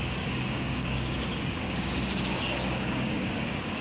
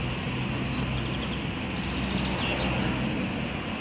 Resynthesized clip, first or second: first